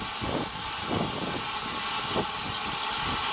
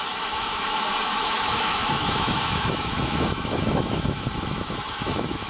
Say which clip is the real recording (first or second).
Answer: first